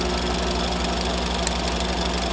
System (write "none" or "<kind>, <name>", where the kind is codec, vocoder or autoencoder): none